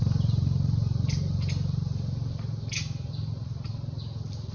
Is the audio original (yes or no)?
yes